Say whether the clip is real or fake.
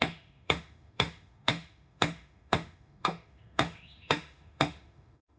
fake